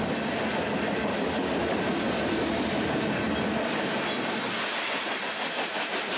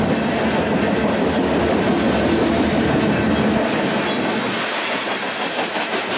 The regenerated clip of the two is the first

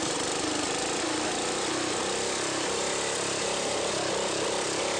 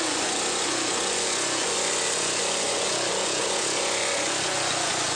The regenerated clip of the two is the second